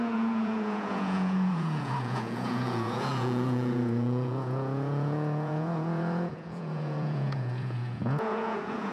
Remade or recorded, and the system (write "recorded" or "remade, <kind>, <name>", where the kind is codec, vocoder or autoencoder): remade, vocoder, Vocos